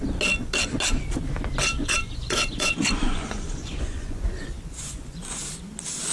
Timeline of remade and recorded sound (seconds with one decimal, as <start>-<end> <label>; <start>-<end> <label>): 0.0-1.8 recorded; 1.8-5.4 remade; 5.4-6.1 recorded